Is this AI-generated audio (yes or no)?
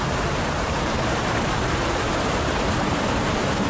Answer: yes